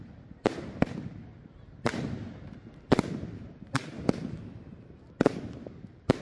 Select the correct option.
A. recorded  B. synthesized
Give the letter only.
A